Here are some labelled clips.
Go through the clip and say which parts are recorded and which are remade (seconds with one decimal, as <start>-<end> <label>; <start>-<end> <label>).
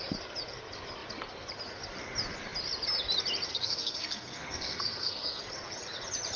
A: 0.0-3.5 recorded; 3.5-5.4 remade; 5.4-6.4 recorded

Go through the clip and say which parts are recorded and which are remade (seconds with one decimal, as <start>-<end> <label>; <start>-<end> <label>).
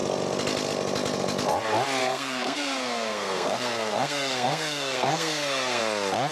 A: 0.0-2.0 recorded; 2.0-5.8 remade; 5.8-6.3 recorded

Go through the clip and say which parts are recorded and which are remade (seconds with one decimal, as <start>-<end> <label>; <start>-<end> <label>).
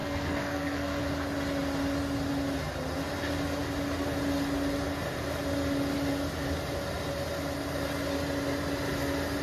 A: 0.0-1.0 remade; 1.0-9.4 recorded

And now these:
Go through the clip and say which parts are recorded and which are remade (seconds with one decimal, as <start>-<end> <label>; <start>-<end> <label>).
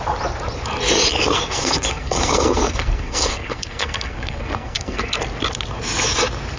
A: 0.0-1.2 recorded; 1.2-5.2 remade; 5.2-6.6 recorded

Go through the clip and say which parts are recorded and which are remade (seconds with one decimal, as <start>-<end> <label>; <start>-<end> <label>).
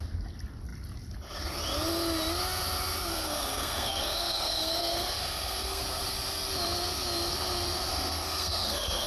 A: 0.0-3.1 recorded; 3.1-5.8 remade; 5.8-7.9 recorded; 7.9-9.1 remade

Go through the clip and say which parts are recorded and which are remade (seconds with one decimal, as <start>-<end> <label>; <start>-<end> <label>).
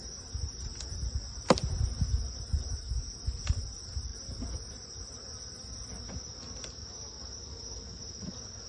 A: 0.0-8.7 recorded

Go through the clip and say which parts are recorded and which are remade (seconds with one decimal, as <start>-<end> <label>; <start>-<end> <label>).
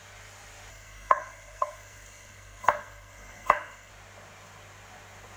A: 0.0-0.7 recorded; 0.7-3.9 remade; 3.9-5.4 recorded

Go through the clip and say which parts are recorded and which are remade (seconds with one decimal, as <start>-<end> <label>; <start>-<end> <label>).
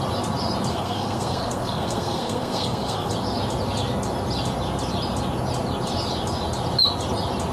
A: 0.0-0.7 recorded; 0.7-3.1 remade; 3.1-7.5 recorded